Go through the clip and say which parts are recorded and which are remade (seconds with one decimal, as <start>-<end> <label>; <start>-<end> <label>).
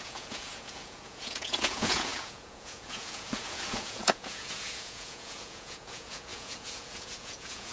0.0-7.7 remade